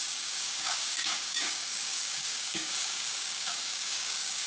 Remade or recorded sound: remade